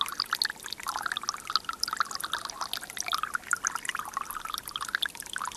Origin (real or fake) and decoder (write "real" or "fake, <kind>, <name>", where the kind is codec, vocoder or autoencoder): real